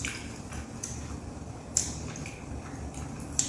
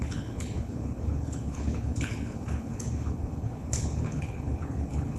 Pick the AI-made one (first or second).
second